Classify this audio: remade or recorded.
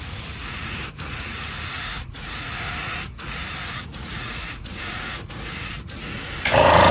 remade